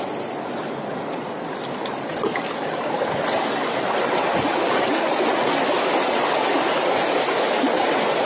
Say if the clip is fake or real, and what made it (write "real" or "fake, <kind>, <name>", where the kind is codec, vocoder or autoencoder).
real